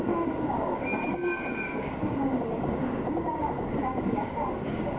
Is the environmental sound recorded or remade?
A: remade